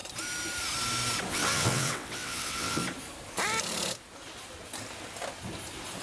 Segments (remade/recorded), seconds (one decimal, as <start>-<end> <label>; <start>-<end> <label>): 0.0-1.3 recorded; 1.3-2.8 remade; 2.8-6.0 recorded